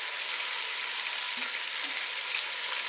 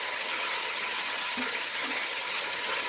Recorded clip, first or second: first